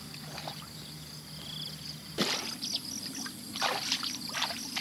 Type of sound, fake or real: real